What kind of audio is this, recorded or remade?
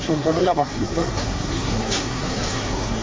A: remade